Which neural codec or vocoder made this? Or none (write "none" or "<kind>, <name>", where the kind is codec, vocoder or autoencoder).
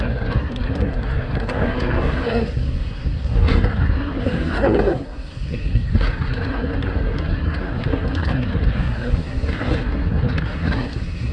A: codec, SNAC